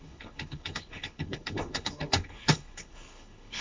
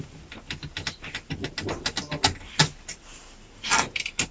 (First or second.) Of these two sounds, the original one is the second